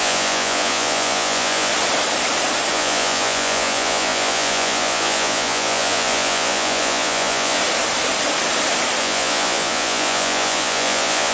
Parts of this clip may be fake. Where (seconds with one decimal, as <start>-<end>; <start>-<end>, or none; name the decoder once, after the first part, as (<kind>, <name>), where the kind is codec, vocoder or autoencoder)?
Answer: 0.0-1.7 (vocoder, Vocos); 2.7-7.6; 9.0-11.3